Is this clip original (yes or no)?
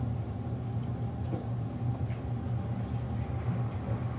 yes